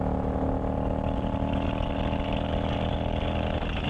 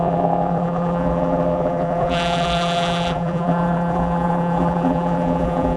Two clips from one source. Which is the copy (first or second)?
second